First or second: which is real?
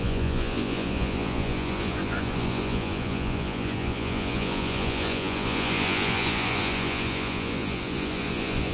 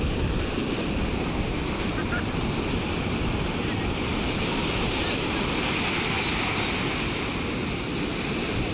second